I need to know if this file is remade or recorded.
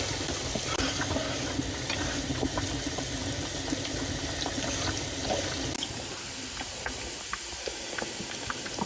recorded